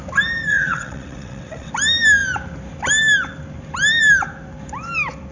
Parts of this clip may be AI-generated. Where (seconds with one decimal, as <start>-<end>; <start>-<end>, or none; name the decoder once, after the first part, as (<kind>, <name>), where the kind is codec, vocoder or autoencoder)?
0.5-1.7 (vocoder, WaveNeXt)